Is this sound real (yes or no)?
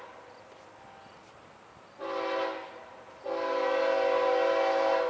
yes